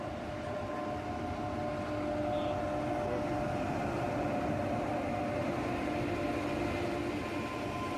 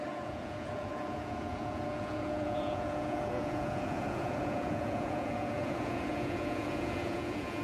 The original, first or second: first